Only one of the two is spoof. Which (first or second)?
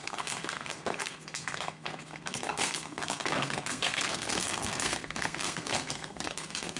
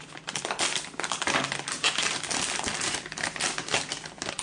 first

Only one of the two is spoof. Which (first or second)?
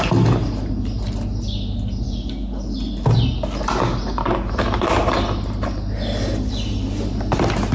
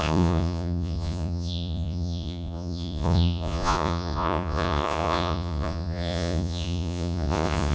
second